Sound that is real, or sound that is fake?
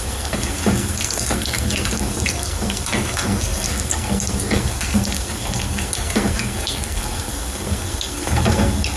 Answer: fake